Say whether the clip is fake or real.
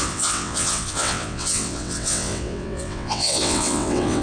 fake